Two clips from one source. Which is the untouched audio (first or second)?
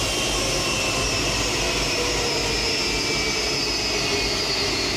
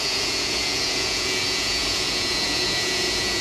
first